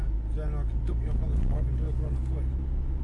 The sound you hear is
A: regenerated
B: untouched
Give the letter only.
B